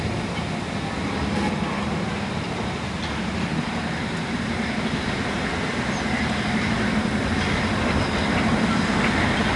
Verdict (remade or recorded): recorded